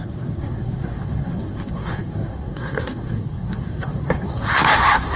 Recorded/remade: remade